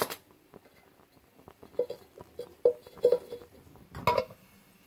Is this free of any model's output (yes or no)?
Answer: yes